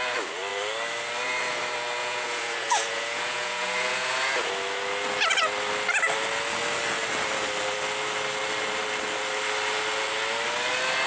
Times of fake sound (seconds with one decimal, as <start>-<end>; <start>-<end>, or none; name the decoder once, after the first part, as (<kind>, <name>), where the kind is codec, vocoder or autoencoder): 2.0-4.5 (vocoder, Vocos)